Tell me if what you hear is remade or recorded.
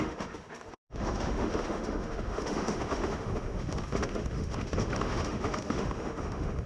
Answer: remade